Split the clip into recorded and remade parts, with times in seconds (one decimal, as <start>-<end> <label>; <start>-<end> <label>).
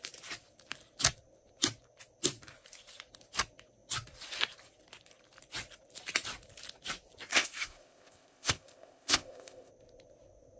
0.0-7.3 recorded; 7.3-9.7 remade; 9.7-10.6 recorded